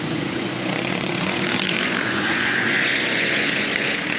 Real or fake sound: fake